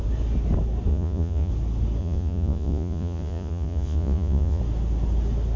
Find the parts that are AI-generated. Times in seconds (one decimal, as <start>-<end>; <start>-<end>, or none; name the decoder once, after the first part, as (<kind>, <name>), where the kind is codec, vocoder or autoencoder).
0.9-1.5 (vocoder, Vocos); 2.0-4.6